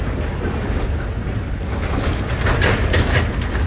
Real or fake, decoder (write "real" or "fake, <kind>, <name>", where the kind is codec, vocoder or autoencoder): real